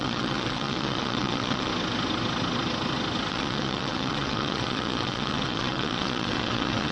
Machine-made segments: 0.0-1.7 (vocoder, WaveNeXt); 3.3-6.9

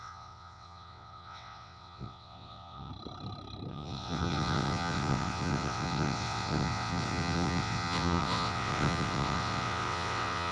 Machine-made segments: 0.0-2.9 (vocoder, WaveNeXt); 3.7-10.5

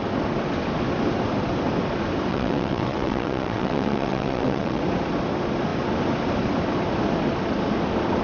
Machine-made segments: 2.3-4.8 (vocoder, WaveNeXt)

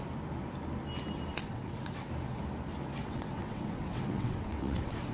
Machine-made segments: 1.4-2.1 (vocoder, WaveNeXt); 3.0-5.1

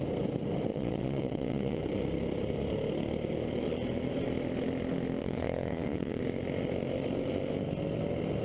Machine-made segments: 0.7-1.8 (vocoder, WaveNeXt); 5.2-6.2

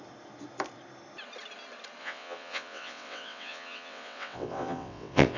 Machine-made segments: 2.0-5.4 (vocoder, WaveNeXt)

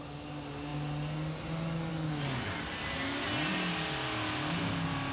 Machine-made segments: none